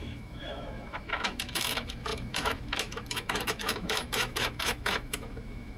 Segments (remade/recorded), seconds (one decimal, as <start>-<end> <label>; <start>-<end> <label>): 0.0-5.8 remade